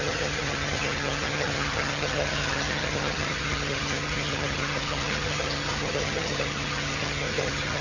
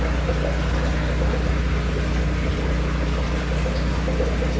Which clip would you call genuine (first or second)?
second